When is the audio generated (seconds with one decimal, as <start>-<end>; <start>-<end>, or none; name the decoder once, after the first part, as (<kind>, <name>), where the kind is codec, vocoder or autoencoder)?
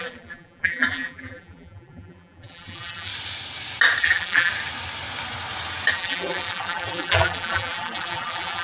0.0-3.1 (vocoder, BigVGAN v2); 4.0-4.5; 5.9-8.6